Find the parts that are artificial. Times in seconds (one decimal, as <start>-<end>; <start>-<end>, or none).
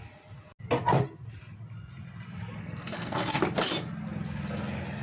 2.6-3.4